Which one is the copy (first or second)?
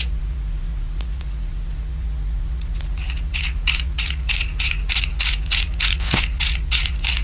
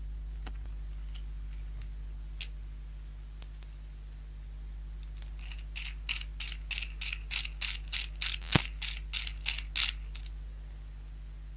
first